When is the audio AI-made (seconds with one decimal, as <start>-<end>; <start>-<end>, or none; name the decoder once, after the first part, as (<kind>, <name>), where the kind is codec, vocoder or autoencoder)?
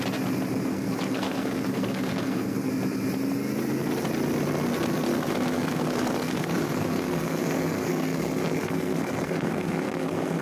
0.7-2.7 (codec, SNAC); 5.1-10.4